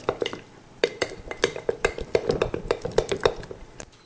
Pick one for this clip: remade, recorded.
remade